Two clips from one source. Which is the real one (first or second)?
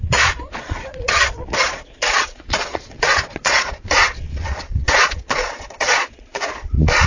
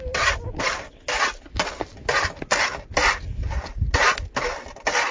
second